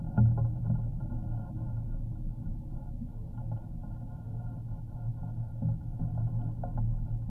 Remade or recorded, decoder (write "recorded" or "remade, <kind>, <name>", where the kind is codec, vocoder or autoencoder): recorded